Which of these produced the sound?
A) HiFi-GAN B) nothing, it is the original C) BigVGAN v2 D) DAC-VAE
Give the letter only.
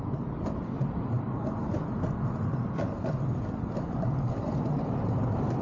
B